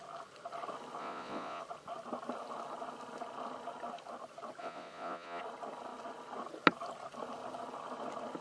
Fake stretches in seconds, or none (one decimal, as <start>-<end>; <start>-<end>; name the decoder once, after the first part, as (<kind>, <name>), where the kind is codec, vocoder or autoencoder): 1.0-1.6 (vocoder, Vocos); 4.6-5.4